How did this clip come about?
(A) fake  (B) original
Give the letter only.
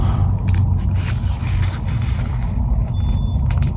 B